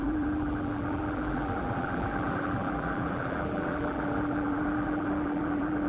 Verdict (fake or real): fake